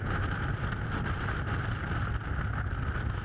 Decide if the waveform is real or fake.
real